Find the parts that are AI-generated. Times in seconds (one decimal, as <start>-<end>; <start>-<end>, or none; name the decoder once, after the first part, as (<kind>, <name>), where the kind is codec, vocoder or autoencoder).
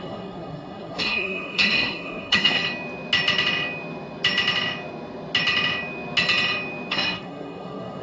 0.0-2.6 (codec, SNAC); 6.9-8.0